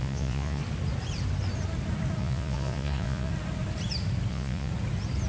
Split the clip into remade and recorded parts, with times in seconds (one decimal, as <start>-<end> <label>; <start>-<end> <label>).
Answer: 0.0-0.6 remade; 0.6-2.2 recorded; 2.2-3.3 remade; 3.3-4.3 recorded; 4.3-4.7 remade; 4.7-5.3 recorded